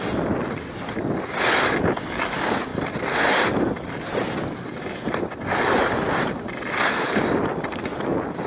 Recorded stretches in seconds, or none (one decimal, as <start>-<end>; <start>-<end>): 0.0-8.5